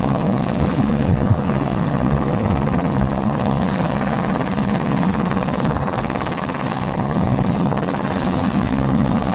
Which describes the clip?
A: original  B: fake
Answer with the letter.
B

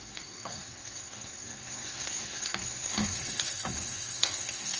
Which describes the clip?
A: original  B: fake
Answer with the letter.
B